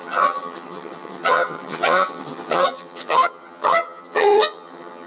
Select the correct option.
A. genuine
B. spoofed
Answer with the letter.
B